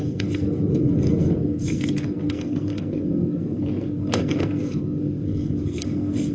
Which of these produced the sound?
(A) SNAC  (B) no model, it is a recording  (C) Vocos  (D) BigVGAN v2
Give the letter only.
A